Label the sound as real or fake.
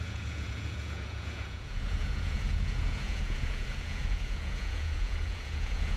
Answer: fake